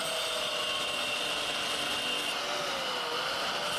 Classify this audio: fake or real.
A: real